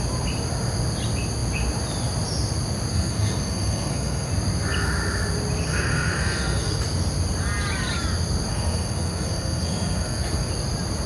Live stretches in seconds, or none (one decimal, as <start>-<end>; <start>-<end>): 0.0-2.9; 4.3-5.7; 6.8-8.5; 10.5-11.1